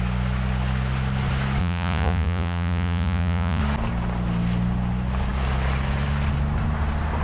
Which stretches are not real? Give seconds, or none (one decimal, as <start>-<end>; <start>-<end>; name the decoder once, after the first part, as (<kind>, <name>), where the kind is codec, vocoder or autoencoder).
1.6-3.6 (vocoder, Vocos)